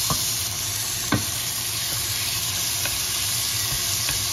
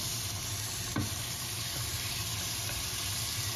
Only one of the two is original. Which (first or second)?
first